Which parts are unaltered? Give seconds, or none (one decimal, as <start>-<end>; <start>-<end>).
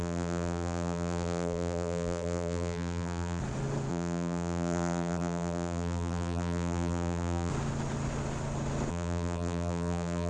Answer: 3.4-3.9; 7.5-8.9